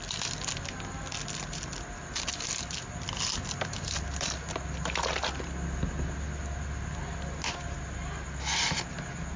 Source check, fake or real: real